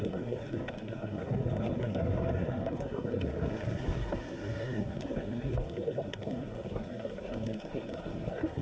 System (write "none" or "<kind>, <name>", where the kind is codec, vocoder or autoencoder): codec, SNAC